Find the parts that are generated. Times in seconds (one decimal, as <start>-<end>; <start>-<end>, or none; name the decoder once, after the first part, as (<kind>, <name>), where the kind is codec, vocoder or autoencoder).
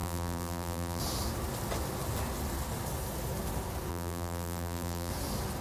0.0-1.0 (vocoder, BigVGAN v2); 3.9-5.1